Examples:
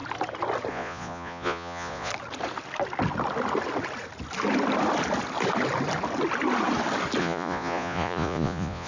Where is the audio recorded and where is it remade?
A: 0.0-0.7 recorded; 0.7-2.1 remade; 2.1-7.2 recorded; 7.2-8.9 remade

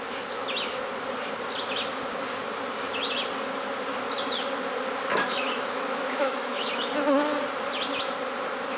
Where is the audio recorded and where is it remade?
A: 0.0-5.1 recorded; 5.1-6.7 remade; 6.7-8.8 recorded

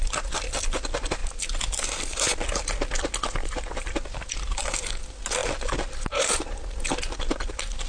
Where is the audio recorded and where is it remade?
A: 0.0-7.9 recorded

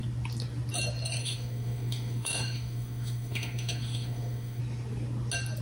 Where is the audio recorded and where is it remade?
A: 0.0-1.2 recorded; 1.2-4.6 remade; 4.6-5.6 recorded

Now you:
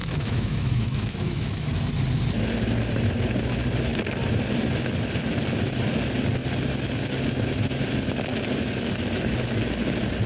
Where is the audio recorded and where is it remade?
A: 0.0-1.7 remade; 1.7-10.3 recorded